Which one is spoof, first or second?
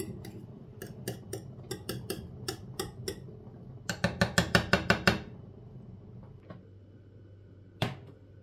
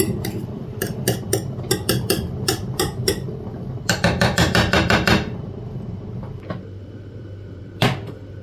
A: second